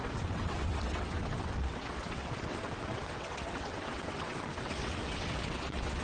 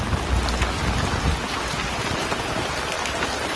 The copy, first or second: first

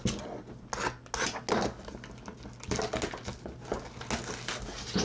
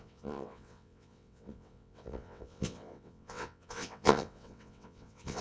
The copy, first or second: second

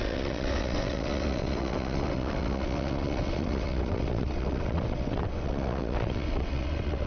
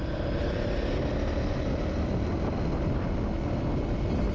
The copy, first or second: first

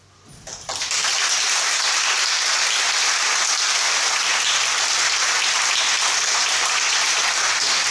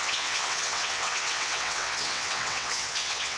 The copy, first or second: second